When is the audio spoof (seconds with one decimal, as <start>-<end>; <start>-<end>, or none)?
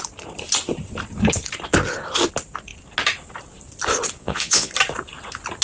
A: 4.2-4.7